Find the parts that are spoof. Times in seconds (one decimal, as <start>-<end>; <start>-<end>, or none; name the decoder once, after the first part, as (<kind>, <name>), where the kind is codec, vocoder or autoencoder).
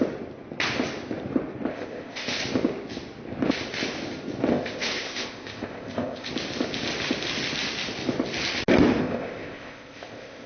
1.7-2.4 (codec, ZipCodec); 4.5-6.3; 9.0-10.5